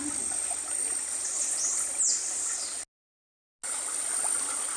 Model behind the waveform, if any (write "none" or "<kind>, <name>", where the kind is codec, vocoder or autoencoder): none